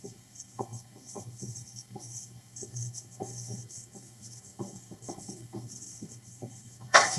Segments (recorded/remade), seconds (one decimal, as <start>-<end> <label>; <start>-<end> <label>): 0.0-7.2 remade